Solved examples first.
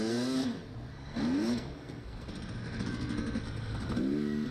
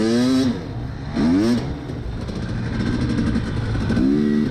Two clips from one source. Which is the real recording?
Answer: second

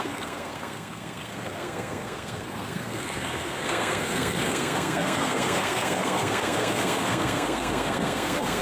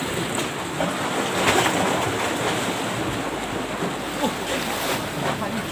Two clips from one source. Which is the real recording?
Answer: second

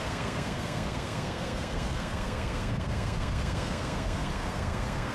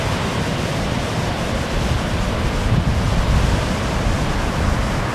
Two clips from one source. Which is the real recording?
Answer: second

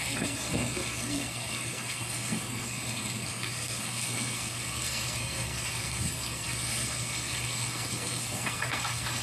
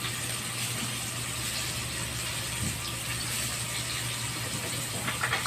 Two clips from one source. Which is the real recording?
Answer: second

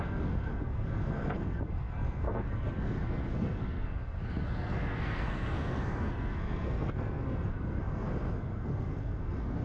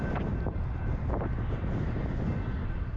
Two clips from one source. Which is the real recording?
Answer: second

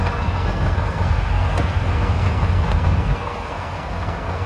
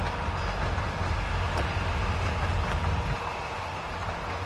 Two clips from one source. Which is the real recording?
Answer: second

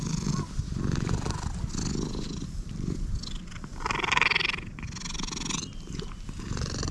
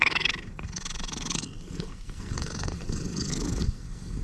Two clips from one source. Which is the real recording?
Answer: first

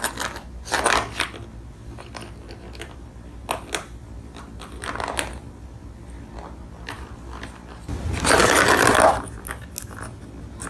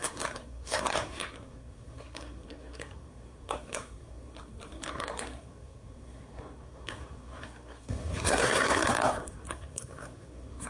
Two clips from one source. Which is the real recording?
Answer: first